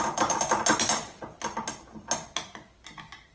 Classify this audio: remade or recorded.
recorded